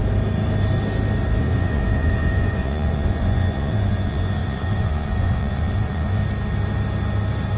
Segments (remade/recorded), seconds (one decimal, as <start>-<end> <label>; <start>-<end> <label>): 0.0-1.4 recorded; 1.4-6.2 remade; 6.2-7.6 recorded